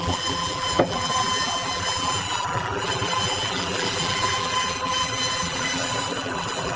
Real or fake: fake